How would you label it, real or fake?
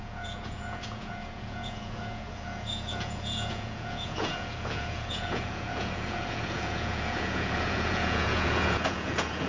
fake